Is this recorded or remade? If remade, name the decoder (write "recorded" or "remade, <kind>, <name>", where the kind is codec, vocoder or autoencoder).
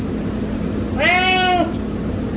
recorded